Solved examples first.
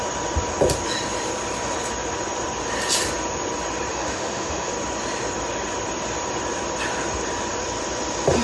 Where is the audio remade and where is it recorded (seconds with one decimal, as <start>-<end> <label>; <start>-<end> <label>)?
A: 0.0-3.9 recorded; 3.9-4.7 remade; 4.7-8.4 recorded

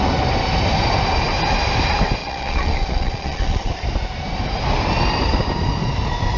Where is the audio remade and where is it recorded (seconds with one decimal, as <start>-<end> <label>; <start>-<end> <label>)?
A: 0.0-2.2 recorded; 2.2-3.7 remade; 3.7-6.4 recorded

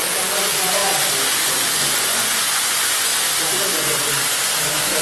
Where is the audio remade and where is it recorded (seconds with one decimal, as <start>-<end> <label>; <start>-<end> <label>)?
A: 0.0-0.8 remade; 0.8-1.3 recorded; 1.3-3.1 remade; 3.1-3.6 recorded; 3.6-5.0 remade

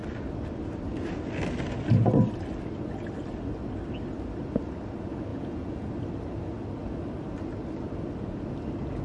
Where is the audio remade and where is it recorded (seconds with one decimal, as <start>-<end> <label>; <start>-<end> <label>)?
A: 0.0-5.3 recorded; 5.3-5.9 remade; 5.9-9.0 recorded